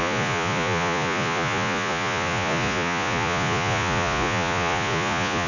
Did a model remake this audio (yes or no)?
yes